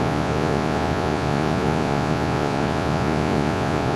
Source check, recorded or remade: remade